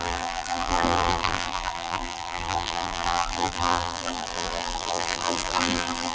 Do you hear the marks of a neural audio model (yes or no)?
yes